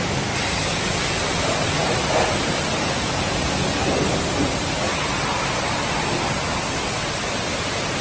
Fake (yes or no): no